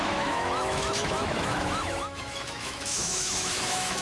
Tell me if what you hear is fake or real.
fake